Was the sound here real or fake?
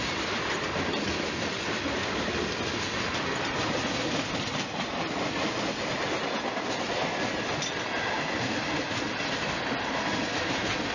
real